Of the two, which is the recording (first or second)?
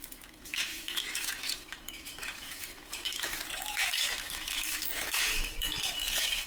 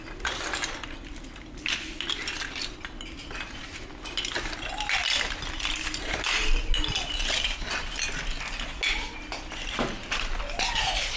second